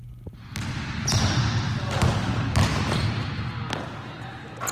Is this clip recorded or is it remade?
recorded